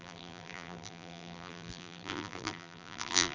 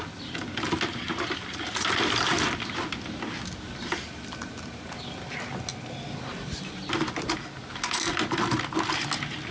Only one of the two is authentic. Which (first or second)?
second